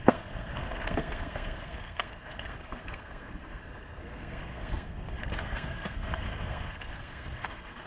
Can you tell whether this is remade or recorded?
remade